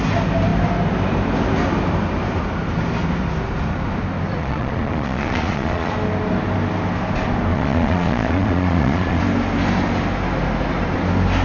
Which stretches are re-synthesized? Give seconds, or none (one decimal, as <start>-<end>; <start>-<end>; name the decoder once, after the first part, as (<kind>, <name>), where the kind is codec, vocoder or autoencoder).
4.4-5.9 (vocoder, Vocos); 7.5-9.2